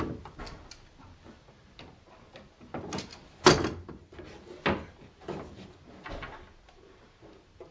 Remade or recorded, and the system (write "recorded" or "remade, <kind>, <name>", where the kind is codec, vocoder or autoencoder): recorded